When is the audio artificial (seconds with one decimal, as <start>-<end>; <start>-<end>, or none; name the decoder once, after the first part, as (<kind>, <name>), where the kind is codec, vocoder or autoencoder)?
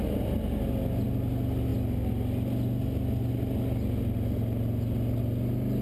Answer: none